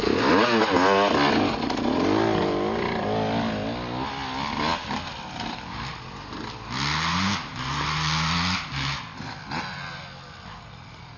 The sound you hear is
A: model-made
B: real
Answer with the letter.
B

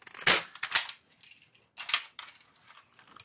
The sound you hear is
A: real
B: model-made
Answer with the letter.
A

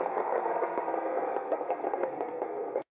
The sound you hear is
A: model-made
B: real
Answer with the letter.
A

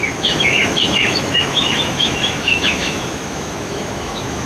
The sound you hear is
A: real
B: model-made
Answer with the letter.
B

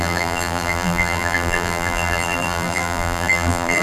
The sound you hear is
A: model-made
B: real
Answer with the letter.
A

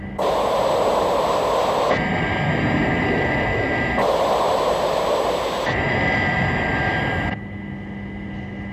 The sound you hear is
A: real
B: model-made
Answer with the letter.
A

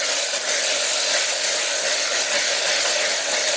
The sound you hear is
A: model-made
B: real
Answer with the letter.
B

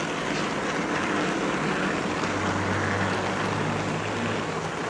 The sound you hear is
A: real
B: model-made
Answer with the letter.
A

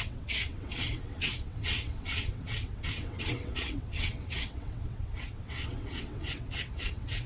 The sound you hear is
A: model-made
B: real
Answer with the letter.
A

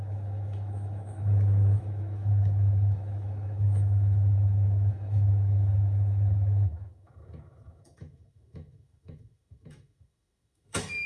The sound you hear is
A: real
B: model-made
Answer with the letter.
B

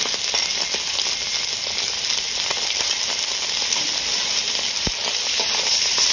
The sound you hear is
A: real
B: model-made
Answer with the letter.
A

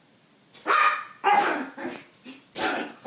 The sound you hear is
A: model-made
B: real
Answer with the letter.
A